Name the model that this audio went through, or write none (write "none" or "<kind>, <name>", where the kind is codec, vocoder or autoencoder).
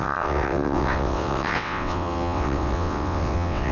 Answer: vocoder, WaveNeXt